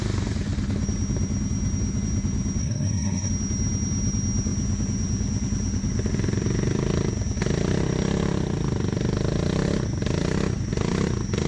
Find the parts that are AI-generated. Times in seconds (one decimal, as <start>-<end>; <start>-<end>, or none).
2.6-3.3